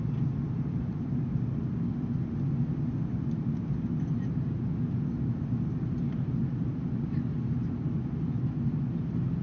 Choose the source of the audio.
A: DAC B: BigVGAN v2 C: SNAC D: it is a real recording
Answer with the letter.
D